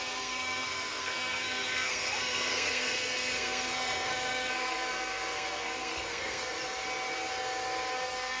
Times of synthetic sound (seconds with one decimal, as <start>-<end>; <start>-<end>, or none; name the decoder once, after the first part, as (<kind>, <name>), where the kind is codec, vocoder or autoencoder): 0.0-6.5 (codec, SNAC); 7.9-8.4

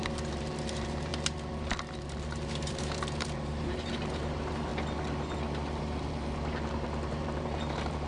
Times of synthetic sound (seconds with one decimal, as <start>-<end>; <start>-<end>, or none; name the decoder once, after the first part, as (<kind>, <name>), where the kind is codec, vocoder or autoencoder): 0.0-4.7 (vocoder, BigVGAN v2); 5.8-8.1

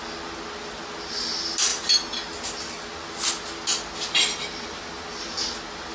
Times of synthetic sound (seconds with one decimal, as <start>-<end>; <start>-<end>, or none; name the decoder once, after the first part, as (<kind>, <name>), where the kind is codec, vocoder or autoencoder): none

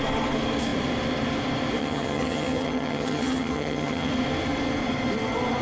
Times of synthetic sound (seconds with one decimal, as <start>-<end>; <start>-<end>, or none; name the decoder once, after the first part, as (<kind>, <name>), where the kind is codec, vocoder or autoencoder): 1.8-4.1 (vocoder, HiFi-GAN)

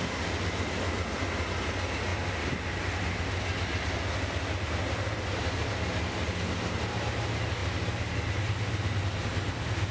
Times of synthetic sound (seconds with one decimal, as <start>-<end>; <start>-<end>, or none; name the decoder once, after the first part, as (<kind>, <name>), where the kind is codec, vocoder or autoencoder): none